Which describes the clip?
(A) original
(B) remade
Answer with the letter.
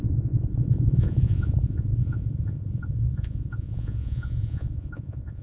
B